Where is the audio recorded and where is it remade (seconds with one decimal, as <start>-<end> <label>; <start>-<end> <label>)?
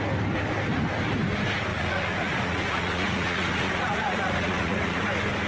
0.0-1.7 recorded; 1.7-5.0 remade; 5.0-5.5 recorded